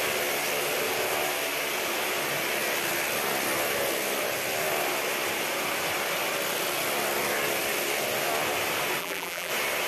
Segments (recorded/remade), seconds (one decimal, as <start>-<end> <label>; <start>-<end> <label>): 0.0-9.0 recorded; 9.0-9.5 remade; 9.5-9.9 recorded